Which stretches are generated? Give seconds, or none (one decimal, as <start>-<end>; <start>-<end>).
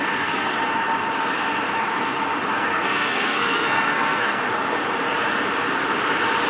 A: 0.0-0.5; 2.5-4.4